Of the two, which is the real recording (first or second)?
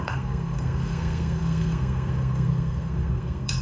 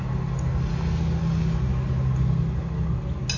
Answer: second